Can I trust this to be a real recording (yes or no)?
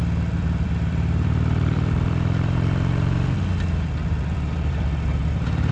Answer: no